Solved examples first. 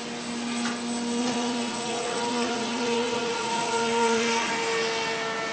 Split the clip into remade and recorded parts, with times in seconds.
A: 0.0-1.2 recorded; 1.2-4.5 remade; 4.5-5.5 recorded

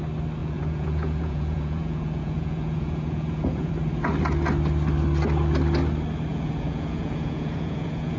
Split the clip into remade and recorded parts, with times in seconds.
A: 0.0-0.4 recorded; 0.4-3.7 remade; 3.7-6.3 recorded; 6.3-8.2 remade

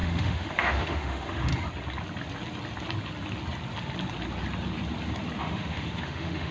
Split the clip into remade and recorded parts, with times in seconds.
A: 0.0-1.5 remade; 1.5-5.4 recorded; 5.4-6.5 remade

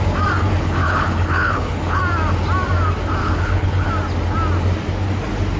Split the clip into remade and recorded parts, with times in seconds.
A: 0.0-0.6 recorded; 0.6-2.0 remade; 2.0-3.2 recorded; 3.2-3.9 remade; 3.9-5.6 recorded

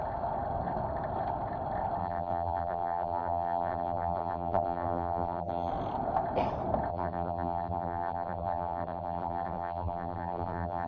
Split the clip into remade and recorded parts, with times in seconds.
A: 0.0-2.0 recorded; 2.0-5.7 remade; 5.7-6.9 recorded; 6.9-10.9 remade

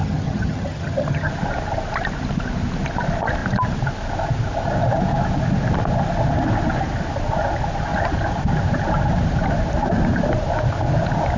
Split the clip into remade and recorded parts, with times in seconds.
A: 0.0-1.3 remade; 1.3-11.4 recorded

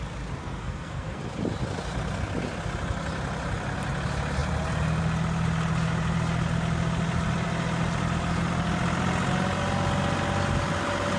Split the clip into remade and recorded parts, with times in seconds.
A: 0.0-0.4 recorded; 0.4-1.2 remade; 1.2-11.2 recorded